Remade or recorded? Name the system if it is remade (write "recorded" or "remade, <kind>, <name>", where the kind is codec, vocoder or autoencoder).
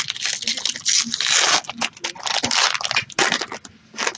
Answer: recorded